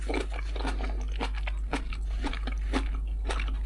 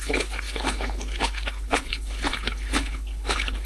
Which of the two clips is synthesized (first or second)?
second